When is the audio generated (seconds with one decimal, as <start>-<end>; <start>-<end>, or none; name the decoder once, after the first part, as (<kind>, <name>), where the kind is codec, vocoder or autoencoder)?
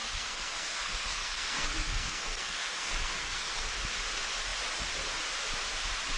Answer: 0.0-3.7 (codec, SNAC)